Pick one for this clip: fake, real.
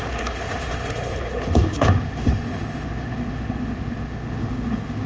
fake